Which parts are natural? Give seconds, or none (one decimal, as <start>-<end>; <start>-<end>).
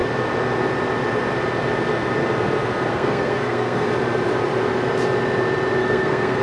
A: 0.0-2.9; 3.9-5.8